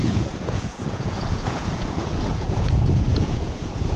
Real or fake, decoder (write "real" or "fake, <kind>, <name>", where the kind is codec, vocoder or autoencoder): fake, vocoder, Vocos